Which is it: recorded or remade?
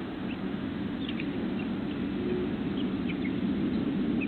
recorded